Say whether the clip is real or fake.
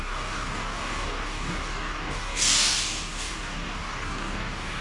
fake